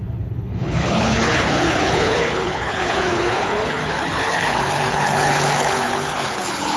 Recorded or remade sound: remade